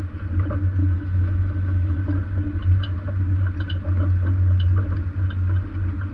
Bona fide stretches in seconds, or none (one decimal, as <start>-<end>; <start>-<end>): 0.0-0.8; 2.0-6.1